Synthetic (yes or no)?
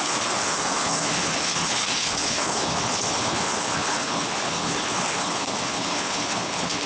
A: yes